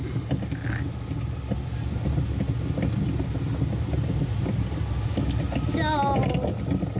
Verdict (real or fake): real